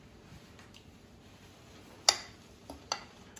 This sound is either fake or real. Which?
real